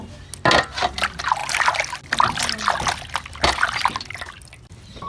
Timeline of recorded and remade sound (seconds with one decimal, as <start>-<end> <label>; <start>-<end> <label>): 0.0-5.1 recorded